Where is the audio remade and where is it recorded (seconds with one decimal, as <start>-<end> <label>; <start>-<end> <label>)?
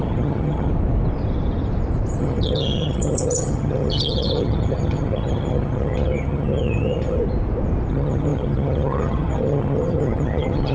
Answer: 0.0-0.7 remade; 0.7-2.2 recorded; 2.2-7.2 remade; 7.2-7.9 recorded; 7.9-10.7 remade